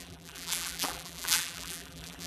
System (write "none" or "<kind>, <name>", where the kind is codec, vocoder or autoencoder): vocoder, BigVGAN v2